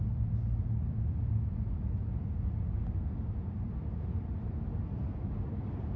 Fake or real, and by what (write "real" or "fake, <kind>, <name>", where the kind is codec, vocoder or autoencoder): real